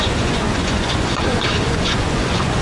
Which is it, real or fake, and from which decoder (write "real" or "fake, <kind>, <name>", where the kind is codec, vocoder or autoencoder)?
fake, vocoder, Vocos